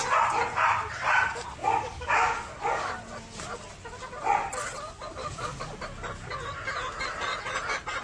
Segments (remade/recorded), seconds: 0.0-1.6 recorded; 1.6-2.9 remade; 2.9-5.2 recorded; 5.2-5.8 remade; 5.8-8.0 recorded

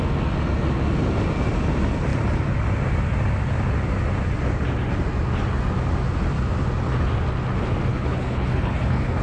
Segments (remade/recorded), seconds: 0.0-7.9 recorded; 7.9-9.2 remade

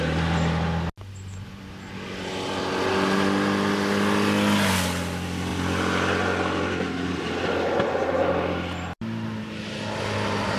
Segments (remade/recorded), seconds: 0.0-10.6 recorded

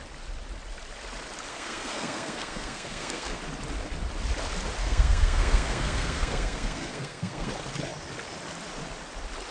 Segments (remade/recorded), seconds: 0.0-1.5 recorded; 1.5-3.4 remade; 3.4-4.8 recorded; 4.8-7.5 remade; 7.5-9.5 recorded

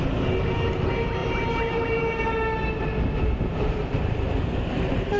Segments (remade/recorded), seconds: 0.0-1.2 recorded; 1.2-2.0 remade; 2.0-3.5 recorded; 3.5-4.3 remade; 4.3-5.2 recorded

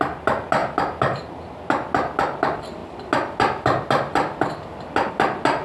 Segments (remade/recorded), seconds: 0.0-5.6 recorded

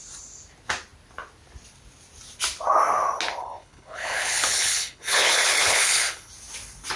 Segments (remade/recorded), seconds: 0.0-3.4 recorded; 3.4-6.3 remade; 6.3-7.0 recorded